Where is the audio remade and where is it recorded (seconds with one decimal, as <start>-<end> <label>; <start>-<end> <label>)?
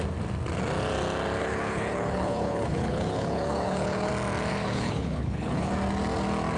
0.0-1.4 recorded; 1.4-4.1 remade; 4.1-4.5 recorded; 4.5-5.7 remade; 5.7-6.6 recorded